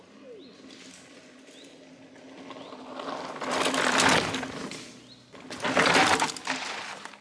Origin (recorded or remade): recorded